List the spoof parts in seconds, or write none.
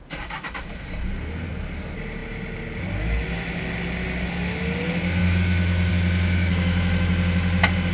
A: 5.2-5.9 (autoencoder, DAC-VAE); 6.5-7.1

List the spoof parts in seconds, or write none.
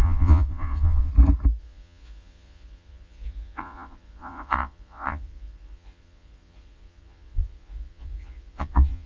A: 0.0-1.1 (vocoder, Vocos); 1.6-9.1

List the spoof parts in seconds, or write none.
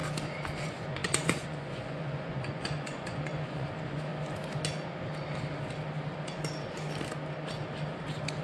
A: 0.6-4.1 (vocoder, Vocos)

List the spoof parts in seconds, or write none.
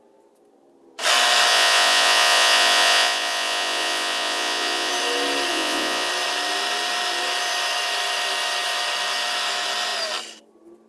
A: 1.5-4.9 (vocoder, Vocos); 5.5-6.1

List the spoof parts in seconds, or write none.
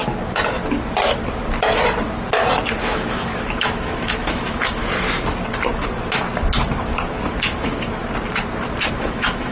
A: 2.8-4.8 (autoencoder, DAC-VAE); 7.4-8.0; 8.9-9.5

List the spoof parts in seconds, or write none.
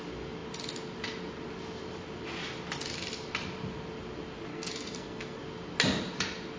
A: 4.5-5.4 (codec, SNAC)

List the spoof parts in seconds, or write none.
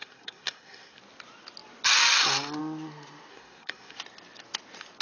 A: 0.0-1.0 (codec, SNAC); 3.3-4.0